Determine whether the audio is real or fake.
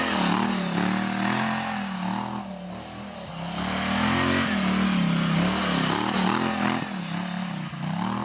real